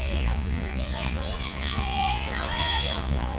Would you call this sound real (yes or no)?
no